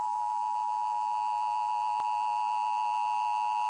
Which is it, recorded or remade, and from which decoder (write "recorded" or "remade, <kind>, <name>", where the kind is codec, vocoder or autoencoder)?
recorded